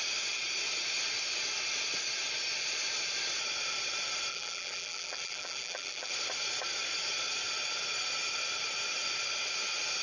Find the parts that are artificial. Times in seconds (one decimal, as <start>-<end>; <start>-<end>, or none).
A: 4.3-6.1